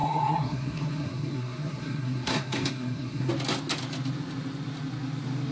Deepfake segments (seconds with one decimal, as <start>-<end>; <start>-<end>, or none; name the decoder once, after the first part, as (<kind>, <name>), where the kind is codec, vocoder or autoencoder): 0.0-3.3 (codec, SNAC)